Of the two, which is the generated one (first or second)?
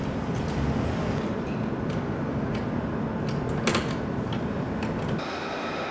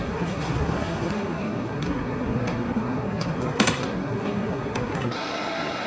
second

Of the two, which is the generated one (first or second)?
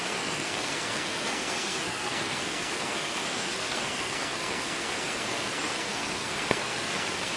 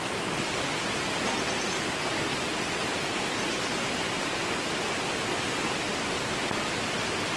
first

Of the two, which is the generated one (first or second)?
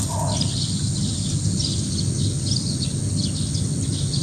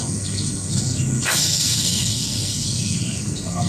second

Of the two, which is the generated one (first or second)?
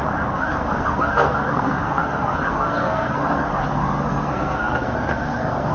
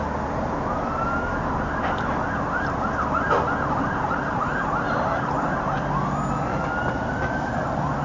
first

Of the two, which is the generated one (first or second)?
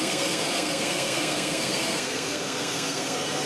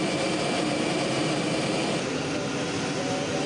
first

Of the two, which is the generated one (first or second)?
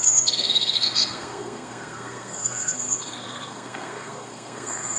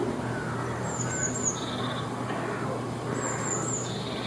first